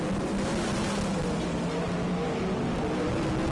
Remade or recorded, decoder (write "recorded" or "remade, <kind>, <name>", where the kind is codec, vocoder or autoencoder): recorded